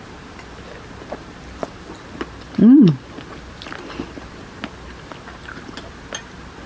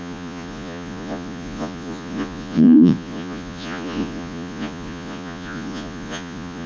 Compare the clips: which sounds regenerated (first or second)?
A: second